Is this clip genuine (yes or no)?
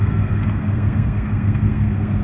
no